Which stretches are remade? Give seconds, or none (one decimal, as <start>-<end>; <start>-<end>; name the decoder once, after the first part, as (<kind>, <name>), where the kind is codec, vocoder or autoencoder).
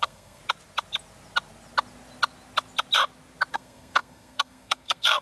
0.0-0.4 (codec, SNAC); 3.5-5.2